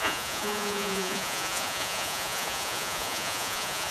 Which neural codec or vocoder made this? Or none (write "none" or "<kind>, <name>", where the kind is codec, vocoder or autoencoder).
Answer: vocoder, Vocos